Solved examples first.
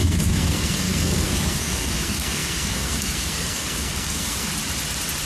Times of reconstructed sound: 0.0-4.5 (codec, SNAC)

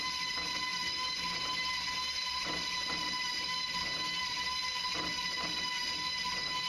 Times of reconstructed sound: none

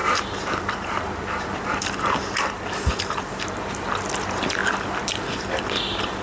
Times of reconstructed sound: 0.0-3.7 (vocoder, BigVGAN v2); 4.6-5.7